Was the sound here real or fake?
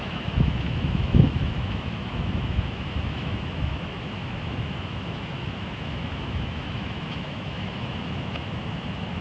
fake